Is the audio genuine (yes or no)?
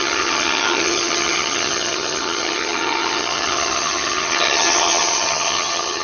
no